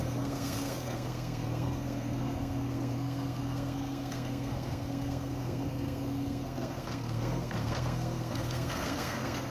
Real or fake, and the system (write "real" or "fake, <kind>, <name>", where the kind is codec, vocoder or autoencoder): fake, codec, SNAC